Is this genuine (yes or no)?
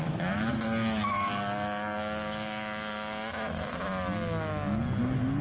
yes